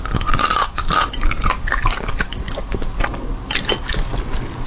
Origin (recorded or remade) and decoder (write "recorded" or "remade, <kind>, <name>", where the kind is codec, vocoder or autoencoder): recorded